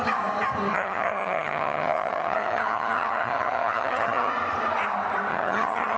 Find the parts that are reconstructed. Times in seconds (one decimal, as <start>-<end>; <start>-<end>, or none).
0.7-4.3; 5.3-6.0